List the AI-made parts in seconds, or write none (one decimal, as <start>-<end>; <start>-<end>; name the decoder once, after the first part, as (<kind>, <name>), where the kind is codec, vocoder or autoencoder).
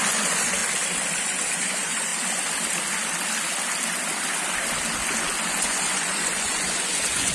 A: 0.0-0.6 (vocoder, Vocos); 1.2-2.1; 5.5-7.3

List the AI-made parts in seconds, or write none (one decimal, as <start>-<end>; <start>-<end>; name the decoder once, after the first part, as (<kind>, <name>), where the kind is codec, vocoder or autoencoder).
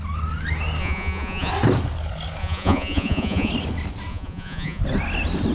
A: 0.8-1.5 (vocoder, Vocos); 2.4-3.5; 4.1-4.8